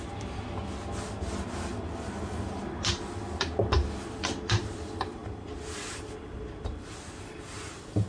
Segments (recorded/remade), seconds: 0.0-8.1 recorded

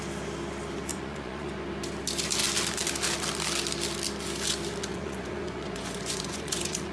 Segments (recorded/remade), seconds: 0.0-0.9 recorded; 0.9-1.5 remade; 1.5-4.9 recorded; 4.9-6.9 remade